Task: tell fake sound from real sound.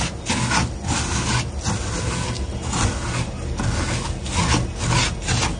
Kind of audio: real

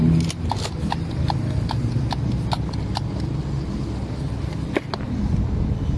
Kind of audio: real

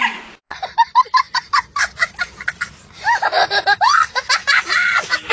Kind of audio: real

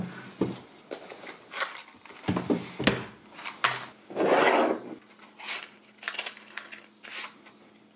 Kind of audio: real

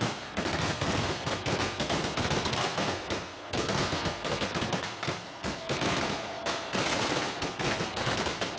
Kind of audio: fake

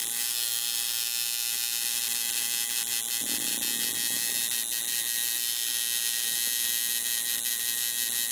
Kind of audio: real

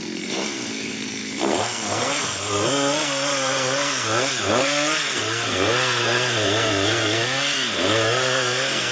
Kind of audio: fake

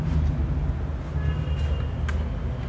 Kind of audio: real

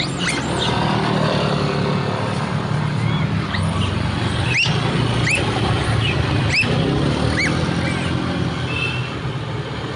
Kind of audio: real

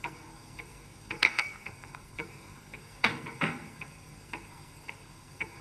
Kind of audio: fake